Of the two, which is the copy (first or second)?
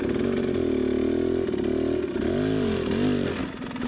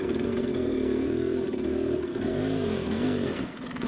second